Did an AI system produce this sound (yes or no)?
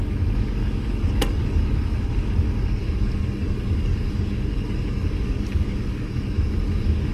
yes